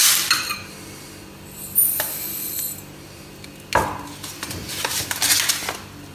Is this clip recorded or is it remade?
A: recorded